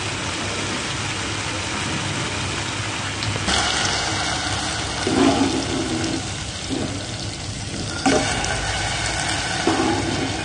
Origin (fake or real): real